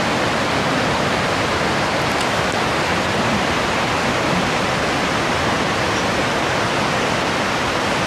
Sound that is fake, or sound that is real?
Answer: fake